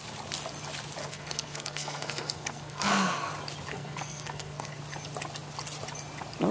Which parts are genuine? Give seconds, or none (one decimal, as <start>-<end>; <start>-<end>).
0.0-1.0; 3.3-3.7; 4.8-6.5

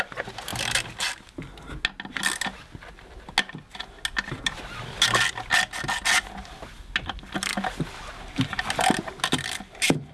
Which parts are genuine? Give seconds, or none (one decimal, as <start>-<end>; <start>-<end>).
0.0-10.1

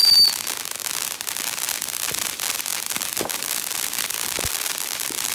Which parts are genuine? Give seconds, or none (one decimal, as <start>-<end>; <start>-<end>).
0.0-5.3

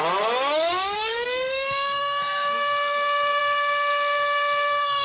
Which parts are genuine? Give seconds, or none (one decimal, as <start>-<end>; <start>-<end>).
none

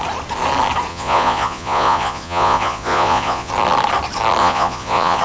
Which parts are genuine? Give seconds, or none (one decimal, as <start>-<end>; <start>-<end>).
0.0-0.9; 3.5-4.4

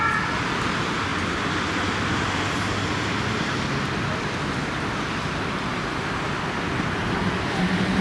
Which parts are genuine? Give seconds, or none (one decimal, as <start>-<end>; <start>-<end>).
0.0-8.0

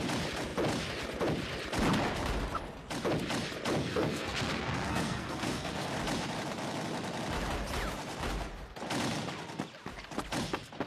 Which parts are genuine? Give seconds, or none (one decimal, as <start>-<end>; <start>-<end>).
0.0-3.8; 5.9-10.9